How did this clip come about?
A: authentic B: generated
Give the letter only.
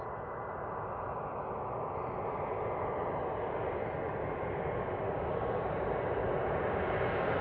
A